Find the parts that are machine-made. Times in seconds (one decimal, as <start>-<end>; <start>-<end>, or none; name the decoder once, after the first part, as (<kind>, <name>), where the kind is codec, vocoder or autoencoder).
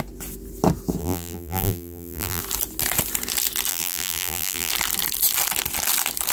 1.0-2.4 (vocoder, BigVGAN v2); 3.7-4.7